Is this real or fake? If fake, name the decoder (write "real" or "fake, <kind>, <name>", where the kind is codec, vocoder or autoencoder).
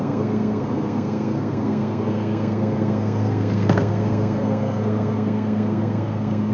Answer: fake, codec, SNAC